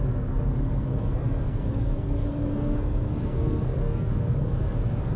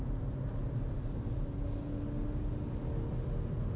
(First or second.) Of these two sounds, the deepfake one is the first